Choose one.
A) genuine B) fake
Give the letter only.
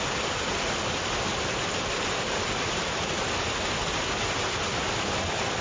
A